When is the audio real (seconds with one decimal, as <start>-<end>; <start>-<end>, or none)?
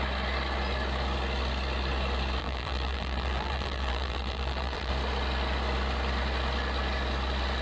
0.0-2.4; 4.9-7.6